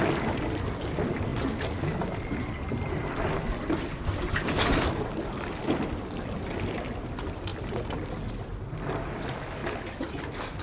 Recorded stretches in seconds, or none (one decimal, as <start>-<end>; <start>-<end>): 1.3-4.9; 9.6-10.2